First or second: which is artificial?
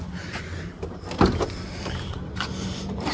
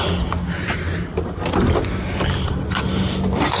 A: first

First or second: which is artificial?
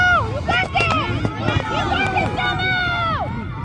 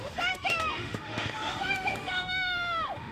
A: second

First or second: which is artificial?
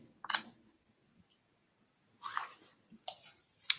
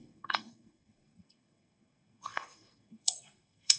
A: second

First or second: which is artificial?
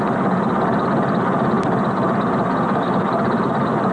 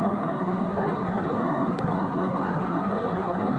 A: second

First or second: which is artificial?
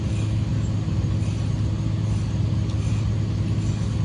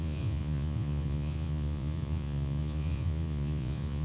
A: second